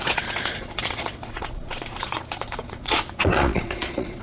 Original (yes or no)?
no